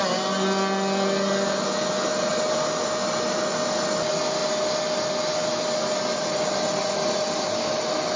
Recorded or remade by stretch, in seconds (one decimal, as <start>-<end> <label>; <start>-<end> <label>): 0.0-8.2 recorded